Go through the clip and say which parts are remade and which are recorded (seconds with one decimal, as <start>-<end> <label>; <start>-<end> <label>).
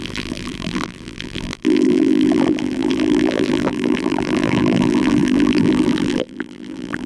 0.0-7.1 remade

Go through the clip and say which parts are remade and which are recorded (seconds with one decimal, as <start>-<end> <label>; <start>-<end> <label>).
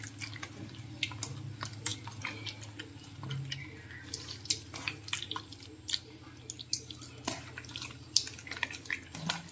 0.0-9.5 recorded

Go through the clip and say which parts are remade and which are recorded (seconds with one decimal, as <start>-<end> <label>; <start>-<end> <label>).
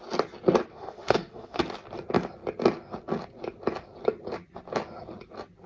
0.0-0.7 recorded; 0.7-1.6 remade; 1.6-5.7 recorded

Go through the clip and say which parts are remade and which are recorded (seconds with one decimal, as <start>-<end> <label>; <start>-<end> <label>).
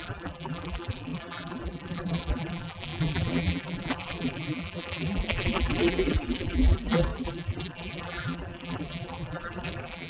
0.0-10.1 remade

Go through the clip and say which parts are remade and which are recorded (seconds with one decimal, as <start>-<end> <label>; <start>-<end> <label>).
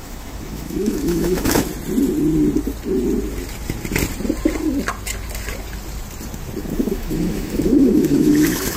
0.0-1.7 remade; 1.7-6.6 recorded; 6.6-8.8 remade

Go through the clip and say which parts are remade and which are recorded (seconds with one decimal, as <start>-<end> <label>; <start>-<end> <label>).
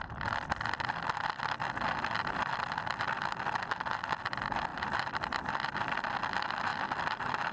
0.0-4.7 recorded; 4.7-5.5 remade; 5.5-6.7 recorded; 6.7-7.5 remade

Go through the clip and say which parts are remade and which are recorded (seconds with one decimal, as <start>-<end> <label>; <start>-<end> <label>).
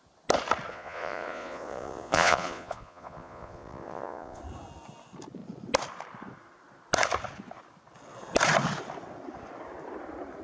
0.0-0.7 recorded; 0.7-4.4 remade; 4.4-10.4 recorded